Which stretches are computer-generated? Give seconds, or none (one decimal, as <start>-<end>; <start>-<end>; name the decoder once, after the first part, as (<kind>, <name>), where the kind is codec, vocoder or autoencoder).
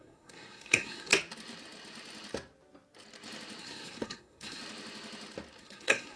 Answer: 0.0-1.1 (codec, SNAC); 3.6-4.6; 5.6-6.2